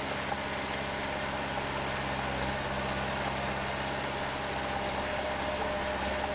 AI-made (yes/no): no